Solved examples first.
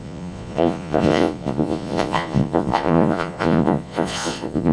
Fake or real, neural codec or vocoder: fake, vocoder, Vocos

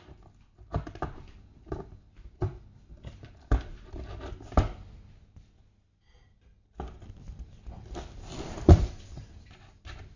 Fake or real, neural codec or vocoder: real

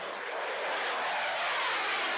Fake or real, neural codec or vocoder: real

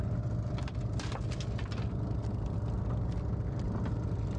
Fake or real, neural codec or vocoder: real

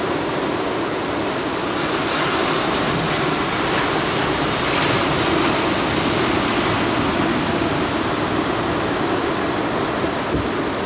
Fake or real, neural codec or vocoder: real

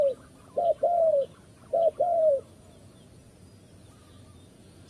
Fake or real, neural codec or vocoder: fake, vocoder, Vocos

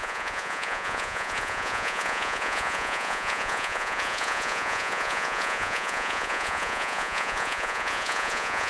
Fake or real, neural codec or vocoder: fake, vocoder, Vocos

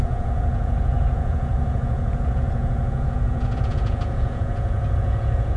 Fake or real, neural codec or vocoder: fake, vocoder, Vocos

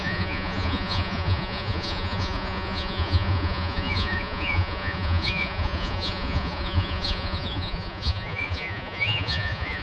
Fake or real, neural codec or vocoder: fake, vocoder, Vocos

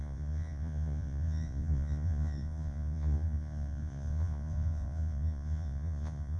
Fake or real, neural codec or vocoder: fake, vocoder, Vocos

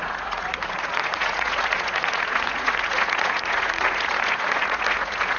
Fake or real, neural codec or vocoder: fake, vocoder, Vocos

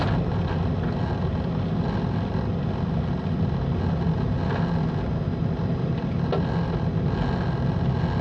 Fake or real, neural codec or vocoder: real